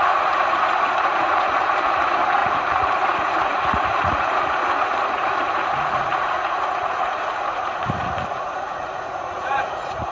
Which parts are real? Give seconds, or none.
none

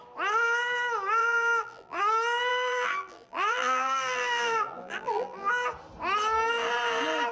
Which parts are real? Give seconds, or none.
0.0-1.2; 2.0-2.5; 5.5-7.3

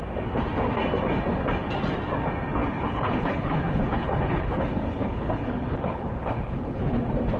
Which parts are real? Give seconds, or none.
0.0-2.6; 6.8-7.4

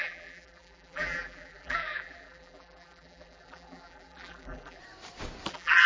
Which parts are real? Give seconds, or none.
4.8-5.5

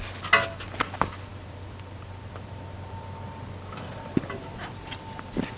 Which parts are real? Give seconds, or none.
0.0-1.3; 4.7-5.6

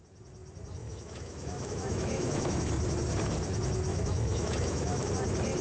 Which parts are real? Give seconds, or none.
0.0-0.8; 2.7-3.9; 5.1-5.6

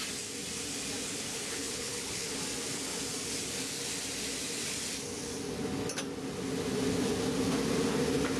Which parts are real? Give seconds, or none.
0.0-1.3; 2.4-8.4